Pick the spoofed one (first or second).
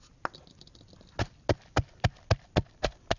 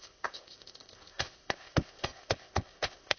second